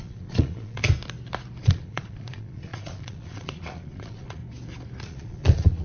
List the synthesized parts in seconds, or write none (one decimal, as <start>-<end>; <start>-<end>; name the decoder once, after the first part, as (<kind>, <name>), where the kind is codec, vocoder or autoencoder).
0.0-0.8 (vocoder, Vocos); 1.6-4.4; 5.0-5.8